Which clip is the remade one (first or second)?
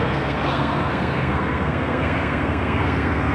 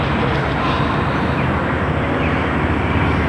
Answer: first